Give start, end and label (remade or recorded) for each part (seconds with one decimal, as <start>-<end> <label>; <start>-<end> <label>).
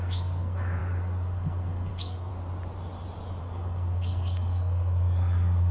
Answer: 0.0-2.3 remade; 2.3-3.4 recorded; 3.4-5.7 remade